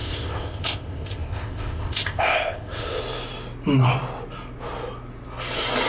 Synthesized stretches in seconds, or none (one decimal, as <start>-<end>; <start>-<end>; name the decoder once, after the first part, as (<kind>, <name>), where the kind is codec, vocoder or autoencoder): 0.0-3.0 (codec, ZipCodec)